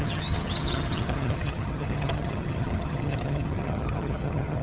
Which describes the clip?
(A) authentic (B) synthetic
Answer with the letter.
B